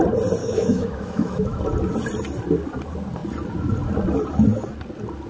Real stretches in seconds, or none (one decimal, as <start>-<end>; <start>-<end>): 0.0-0.4; 1.6-5.3